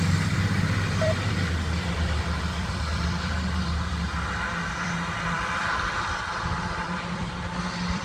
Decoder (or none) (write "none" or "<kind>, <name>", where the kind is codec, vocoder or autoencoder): vocoder, BigVGAN v2